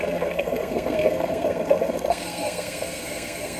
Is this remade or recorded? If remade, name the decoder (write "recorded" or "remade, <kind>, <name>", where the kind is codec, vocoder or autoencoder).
remade, codec, SNAC